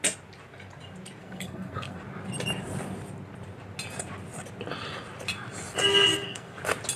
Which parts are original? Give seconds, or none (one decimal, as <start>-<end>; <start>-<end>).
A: 0.0-1.2; 2.0-6.1; 6.6-7.0